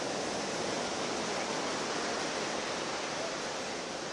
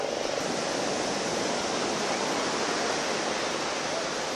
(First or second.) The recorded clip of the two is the second